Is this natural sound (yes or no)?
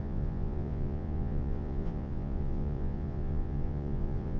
no